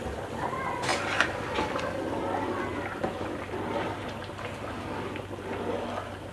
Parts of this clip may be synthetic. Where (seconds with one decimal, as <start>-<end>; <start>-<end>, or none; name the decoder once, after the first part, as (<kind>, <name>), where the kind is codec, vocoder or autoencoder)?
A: none